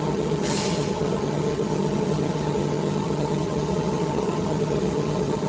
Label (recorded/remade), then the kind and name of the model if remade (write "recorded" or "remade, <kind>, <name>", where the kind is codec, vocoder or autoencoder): remade, vocoder, HiFi-GAN